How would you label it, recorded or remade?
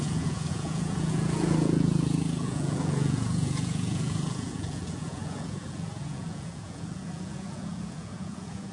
remade